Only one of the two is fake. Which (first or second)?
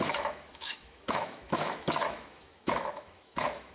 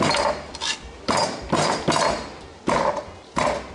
first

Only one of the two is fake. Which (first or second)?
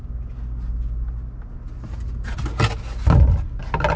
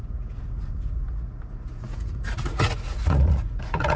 second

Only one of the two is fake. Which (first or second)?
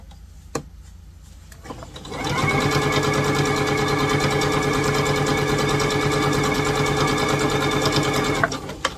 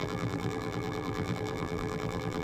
second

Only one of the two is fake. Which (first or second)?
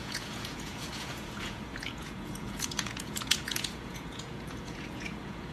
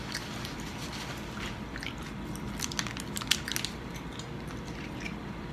first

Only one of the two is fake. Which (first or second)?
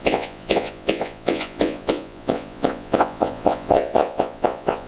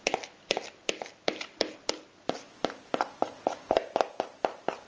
first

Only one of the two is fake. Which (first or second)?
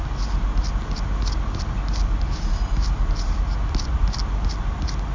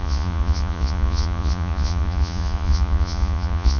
second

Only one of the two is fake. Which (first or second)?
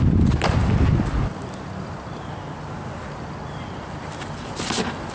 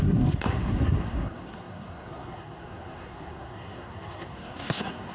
second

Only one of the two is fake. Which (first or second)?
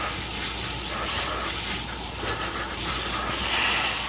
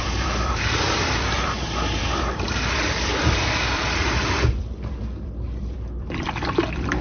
second